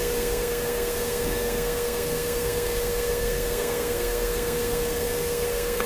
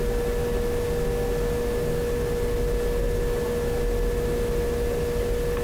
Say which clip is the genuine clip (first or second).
second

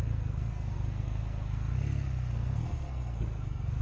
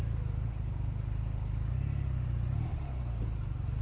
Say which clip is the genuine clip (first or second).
second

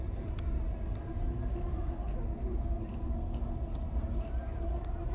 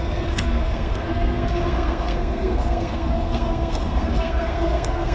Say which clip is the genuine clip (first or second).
first